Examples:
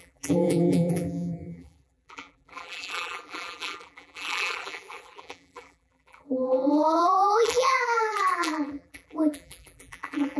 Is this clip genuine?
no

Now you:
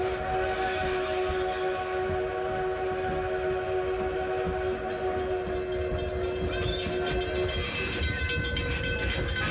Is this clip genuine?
yes